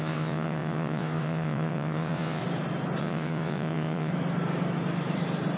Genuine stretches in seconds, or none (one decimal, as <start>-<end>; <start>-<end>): 2.4-3.0; 4.1-5.6